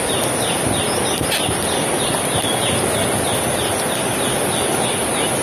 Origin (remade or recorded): recorded